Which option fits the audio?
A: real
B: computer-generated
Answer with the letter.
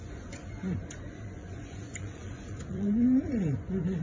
B